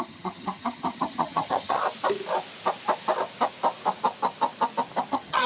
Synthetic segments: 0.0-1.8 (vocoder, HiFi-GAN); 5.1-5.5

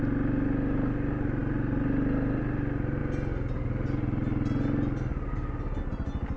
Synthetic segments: none

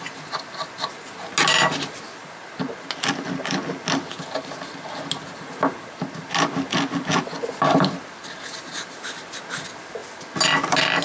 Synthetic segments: none

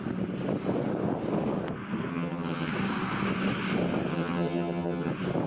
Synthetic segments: 2.1-2.7 (vocoder, HiFi-GAN); 4.1-5.1

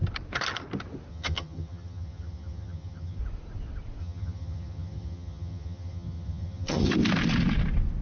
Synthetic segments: 1.1-3.2 (vocoder, HiFi-GAN); 4.0-6.9

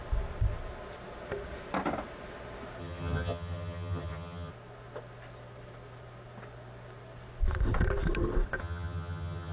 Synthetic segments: 2.8-4.5 (vocoder, HiFi-GAN); 8.6-9.5

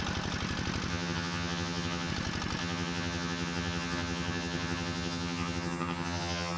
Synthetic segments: 0.9-2.1 (vocoder, HiFi-GAN); 2.6-6.6

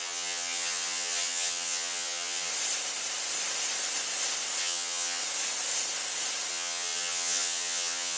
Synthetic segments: 0.0-2.5 (vocoder, HiFi-GAN); 4.6-5.2; 6.5-8.2